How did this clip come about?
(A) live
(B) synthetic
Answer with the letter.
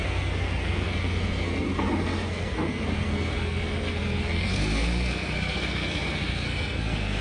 B